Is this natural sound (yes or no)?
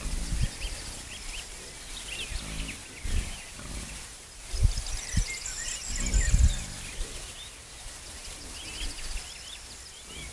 yes